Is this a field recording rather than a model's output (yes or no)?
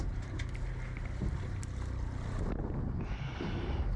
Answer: yes